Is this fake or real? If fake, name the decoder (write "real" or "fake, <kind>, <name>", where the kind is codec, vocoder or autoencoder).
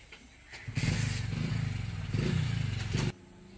real